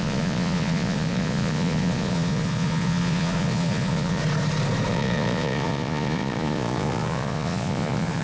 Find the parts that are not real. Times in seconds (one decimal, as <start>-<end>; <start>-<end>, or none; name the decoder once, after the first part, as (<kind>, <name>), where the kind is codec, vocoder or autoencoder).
0.0-4.2 (vocoder, Vocos); 4.9-8.2